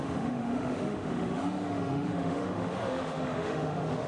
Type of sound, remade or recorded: remade